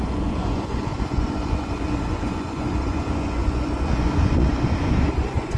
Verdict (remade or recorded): remade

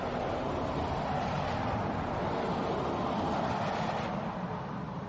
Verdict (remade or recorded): recorded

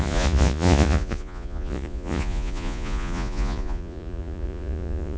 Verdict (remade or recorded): remade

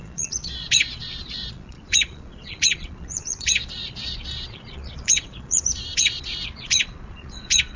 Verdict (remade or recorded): remade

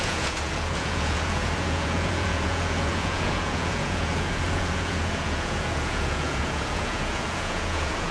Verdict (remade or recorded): remade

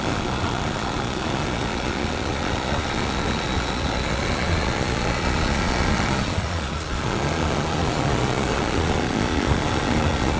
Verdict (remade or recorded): remade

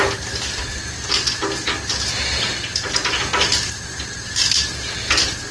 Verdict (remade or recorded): recorded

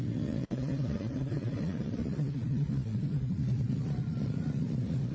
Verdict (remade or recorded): remade